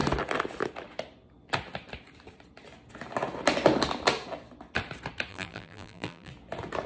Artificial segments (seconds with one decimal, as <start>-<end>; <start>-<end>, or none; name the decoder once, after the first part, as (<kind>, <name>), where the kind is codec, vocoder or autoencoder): 5.3-6.3 (vocoder, BigVGAN v2)